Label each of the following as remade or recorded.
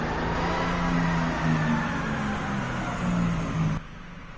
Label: recorded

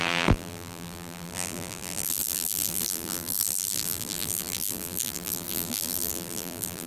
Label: remade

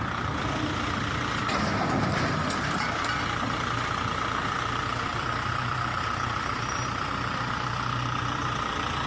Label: remade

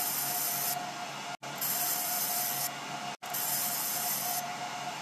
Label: recorded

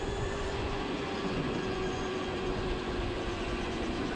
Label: remade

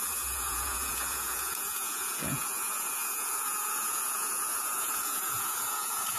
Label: remade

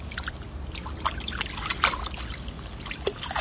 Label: recorded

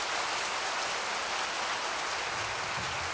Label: recorded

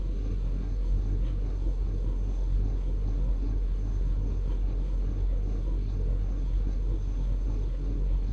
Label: remade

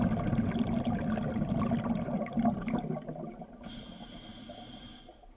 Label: recorded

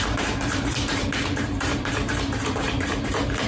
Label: remade